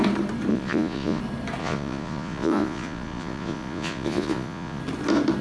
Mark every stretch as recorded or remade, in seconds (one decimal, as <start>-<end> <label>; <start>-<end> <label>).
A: 0.0-0.5 recorded; 0.5-1.2 remade; 1.2-1.6 recorded; 1.6-4.8 remade; 4.8-5.4 recorded